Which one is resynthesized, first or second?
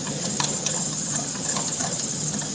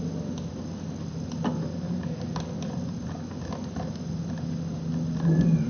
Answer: first